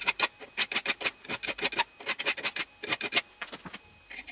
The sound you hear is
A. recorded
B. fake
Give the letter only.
A